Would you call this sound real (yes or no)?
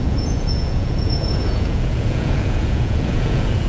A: no